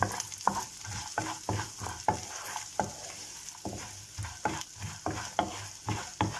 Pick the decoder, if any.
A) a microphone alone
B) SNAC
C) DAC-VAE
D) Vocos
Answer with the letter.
A